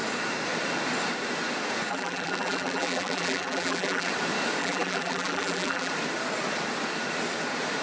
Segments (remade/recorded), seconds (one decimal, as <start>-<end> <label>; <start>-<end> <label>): 0.0-1.9 recorded; 1.9-4.1 remade; 4.1-4.6 recorded; 4.6-5.9 remade; 5.9-7.8 recorded